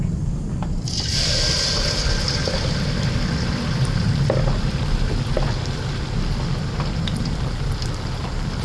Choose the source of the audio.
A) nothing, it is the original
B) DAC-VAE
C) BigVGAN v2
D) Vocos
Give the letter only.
C